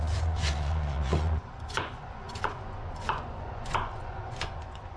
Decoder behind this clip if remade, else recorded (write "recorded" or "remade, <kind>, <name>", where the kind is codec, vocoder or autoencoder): remade, vocoder, Vocos